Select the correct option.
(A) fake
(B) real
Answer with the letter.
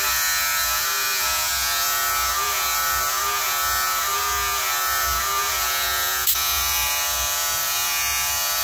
A